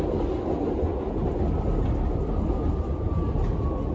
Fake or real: real